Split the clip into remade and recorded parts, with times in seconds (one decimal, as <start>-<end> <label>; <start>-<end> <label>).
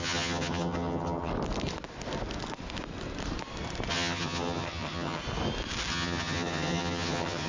0.0-1.3 remade; 1.3-3.9 recorded; 3.9-5.2 remade; 5.2-5.9 recorded; 5.9-7.5 remade